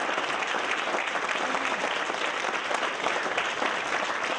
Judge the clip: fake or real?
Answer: real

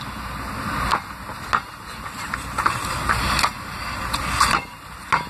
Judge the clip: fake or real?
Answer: real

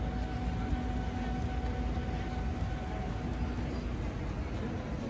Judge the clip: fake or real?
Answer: real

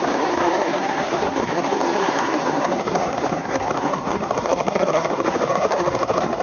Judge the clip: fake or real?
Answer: fake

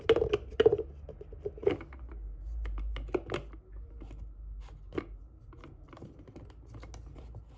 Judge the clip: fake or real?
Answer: real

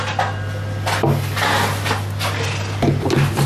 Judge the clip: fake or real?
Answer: real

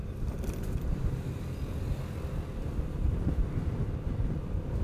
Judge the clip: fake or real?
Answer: real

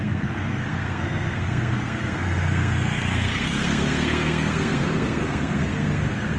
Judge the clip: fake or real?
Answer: fake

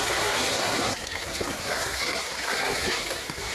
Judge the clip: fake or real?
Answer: fake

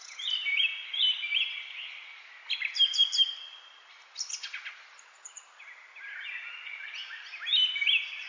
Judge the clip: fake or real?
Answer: real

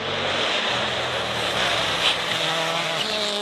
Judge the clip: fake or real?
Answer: real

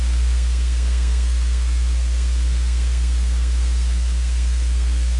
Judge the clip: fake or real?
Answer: fake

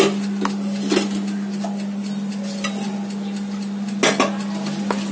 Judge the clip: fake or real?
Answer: real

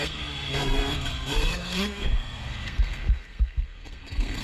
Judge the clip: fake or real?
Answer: fake